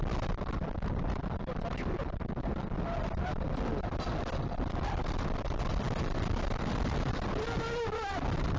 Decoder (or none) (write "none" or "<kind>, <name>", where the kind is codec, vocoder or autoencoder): none